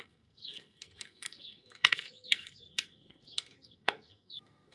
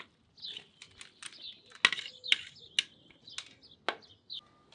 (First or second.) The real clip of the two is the second